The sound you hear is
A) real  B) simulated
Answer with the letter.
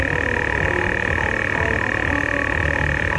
A